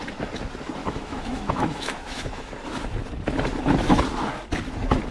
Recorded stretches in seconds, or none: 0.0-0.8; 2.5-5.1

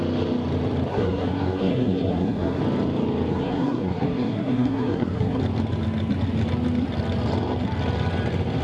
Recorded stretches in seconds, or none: 0.0-0.9; 2.6-3.3; 5.4-8.6

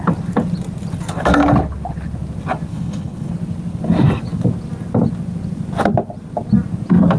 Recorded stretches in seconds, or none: 0.0-2.7; 3.3-7.2

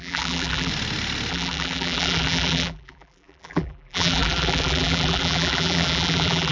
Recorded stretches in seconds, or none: 0.7-1.3

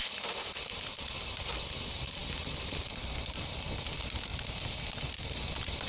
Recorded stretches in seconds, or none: 0.0-5.9